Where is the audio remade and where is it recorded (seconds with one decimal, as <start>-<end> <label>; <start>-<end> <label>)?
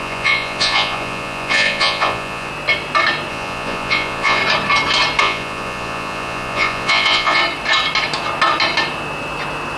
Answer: 0.0-2.5 remade; 2.5-3.3 recorded; 3.3-4.4 remade; 4.4-5.2 recorded; 5.2-7.4 remade; 7.4-9.8 recorded